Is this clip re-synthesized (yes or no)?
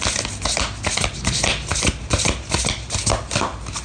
no